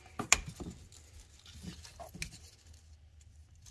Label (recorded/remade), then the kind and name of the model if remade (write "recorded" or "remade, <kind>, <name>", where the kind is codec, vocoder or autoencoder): recorded